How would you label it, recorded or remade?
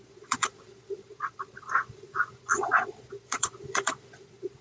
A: remade